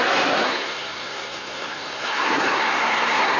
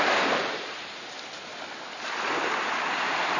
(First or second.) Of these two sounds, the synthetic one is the first